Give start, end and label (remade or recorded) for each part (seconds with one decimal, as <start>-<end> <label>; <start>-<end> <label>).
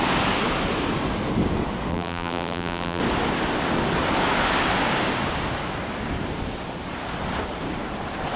0.0-1.9 recorded; 1.9-3.0 remade; 3.0-8.4 recorded